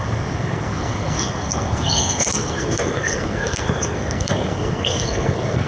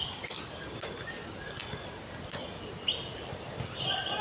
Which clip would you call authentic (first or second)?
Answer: second